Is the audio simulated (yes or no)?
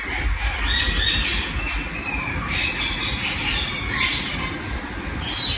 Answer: no